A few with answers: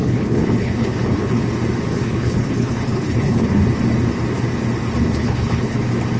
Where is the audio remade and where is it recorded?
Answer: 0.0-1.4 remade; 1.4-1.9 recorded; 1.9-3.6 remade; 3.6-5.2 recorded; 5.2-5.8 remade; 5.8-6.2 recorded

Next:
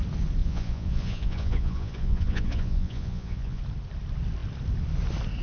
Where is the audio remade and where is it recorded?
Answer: 0.0-0.4 recorded; 0.4-3.6 remade; 3.6-5.4 recorded